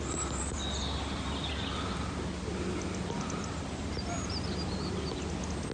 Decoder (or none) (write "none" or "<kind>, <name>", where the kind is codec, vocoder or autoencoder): none